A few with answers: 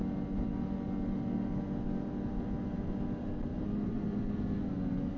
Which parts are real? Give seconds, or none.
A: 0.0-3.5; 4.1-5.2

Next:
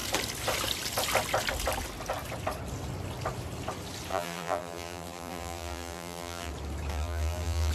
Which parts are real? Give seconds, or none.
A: 0.0-4.1; 6.5-6.9

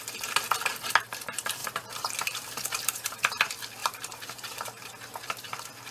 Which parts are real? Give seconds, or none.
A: 0.0-1.6; 3.4-3.8; 4.9-5.9

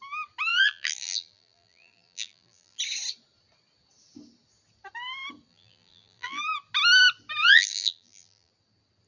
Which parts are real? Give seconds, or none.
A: 0.0-0.5; 2.8-5.5; 6.4-7.4; 8.5-9.1

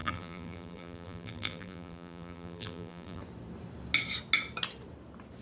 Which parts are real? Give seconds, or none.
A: 3.2-5.4